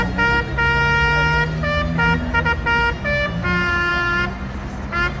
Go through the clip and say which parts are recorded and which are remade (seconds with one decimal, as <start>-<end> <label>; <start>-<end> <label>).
0.0-5.2 recorded